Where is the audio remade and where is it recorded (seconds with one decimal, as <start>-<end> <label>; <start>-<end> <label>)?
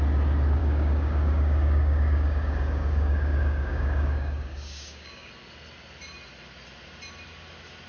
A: 0.0-0.6 recorded; 0.6-5.3 remade; 5.3-7.9 recorded